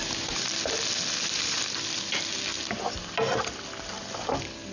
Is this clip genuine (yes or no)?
yes